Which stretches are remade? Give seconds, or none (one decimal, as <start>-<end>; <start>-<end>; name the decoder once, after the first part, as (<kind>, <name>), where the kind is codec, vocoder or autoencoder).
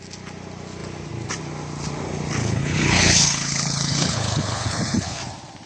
2.4-5.2 (codec, HILCodec)